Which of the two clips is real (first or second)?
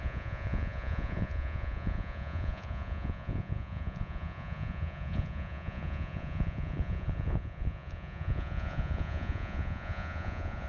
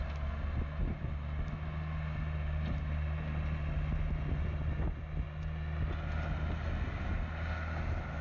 second